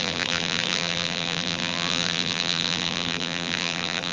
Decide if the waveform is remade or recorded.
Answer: remade